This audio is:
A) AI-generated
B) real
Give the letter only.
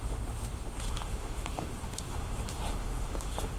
A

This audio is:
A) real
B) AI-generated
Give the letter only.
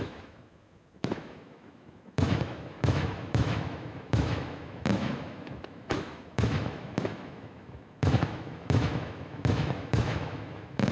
B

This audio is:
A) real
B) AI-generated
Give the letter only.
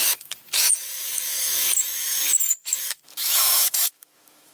B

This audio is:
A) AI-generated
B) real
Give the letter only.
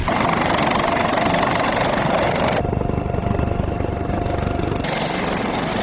B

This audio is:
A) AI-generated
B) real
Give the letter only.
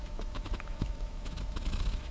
A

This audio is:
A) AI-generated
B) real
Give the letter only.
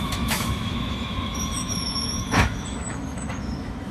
A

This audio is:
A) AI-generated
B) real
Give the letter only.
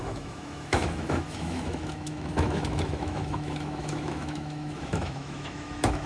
A